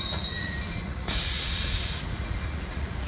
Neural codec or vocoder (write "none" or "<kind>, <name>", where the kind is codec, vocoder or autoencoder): vocoder, Vocos